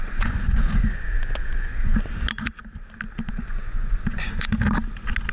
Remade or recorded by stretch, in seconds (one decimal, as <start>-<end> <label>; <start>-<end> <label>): 0.0-1.9 remade; 1.9-3.3 recorded; 3.3-4.5 remade; 4.5-5.3 recorded